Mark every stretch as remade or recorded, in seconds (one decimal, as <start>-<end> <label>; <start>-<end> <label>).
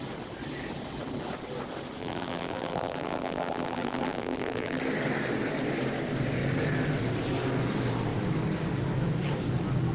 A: 0.0-2.0 recorded; 2.0-4.8 remade; 4.8-9.9 recorded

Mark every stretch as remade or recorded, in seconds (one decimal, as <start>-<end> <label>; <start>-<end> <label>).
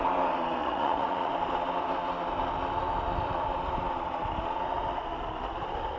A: 0.0-0.6 recorded; 0.6-1.3 remade; 1.3-6.0 recorded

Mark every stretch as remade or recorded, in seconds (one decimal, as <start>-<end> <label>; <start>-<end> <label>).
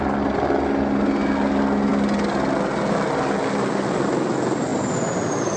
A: 0.0-5.6 recorded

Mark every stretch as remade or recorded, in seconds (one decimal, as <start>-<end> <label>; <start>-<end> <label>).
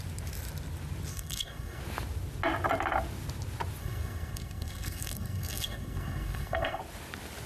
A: 0.0-1.1 recorded; 1.1-1.8 remade; 1.8-3.8 recorded; 3.8-6.8 remade; 6.8-7.5 recorded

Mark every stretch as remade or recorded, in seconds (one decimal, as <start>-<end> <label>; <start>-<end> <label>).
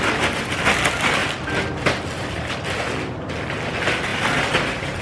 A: 0.0-4.1 recorded; 4.1-5.0 remade